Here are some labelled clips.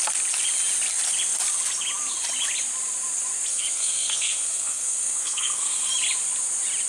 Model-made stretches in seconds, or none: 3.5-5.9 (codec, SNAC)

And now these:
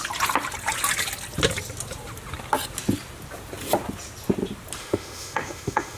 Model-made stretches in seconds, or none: 4.8-6.0 (autoencoder, DAC-VAE)